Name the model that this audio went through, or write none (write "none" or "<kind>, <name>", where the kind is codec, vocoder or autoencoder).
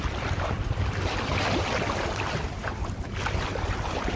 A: none